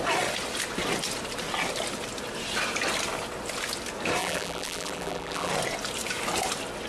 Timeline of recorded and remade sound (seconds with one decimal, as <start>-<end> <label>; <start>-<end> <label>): 0.0-4.2 recorded; 4.2-5.5 remade; 5.5-6.9 recorded